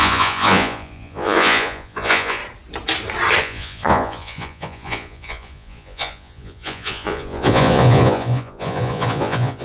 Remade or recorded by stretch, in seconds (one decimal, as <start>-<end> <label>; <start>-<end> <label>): 0.0-2.4 remade; 2.4-3.4 recorded; 3.4-9.6 remade